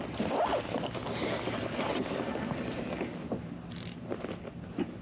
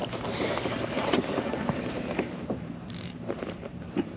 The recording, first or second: first